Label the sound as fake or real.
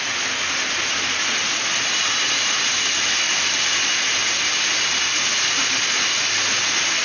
real